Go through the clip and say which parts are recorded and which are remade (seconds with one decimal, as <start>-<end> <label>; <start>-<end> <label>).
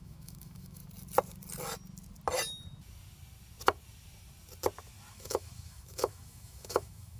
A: 0.0-0.8 remade; 0.8-5.1 recorded; 5.1-7.2 remade